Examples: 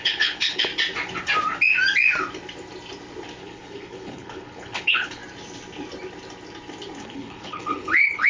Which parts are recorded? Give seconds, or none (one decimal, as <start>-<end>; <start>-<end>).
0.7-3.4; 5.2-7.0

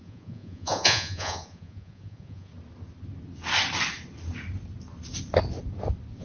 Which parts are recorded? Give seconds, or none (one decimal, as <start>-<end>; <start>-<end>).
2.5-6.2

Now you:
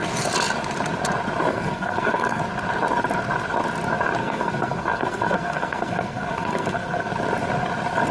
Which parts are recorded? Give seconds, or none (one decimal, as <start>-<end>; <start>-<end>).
0.0-1.5; 2.4-4.2; 7.1-8.1

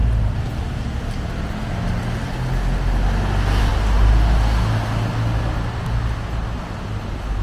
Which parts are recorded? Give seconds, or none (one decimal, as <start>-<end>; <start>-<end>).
0.0-7.4

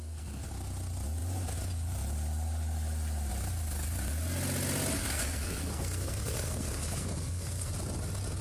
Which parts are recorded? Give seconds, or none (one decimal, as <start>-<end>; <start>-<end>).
0.5-5.0; 7.7-8.4